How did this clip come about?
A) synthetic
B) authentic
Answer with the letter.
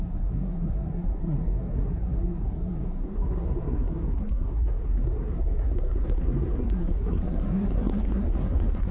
A